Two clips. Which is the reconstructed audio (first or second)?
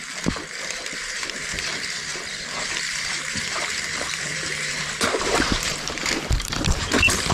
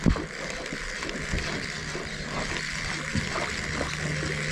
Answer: first